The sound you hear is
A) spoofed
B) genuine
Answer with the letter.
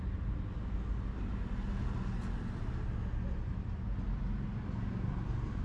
B